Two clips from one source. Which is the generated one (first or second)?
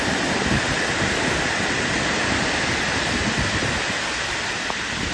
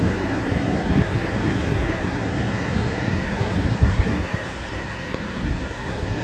second